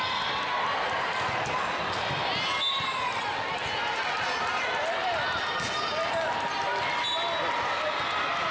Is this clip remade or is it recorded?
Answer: recorded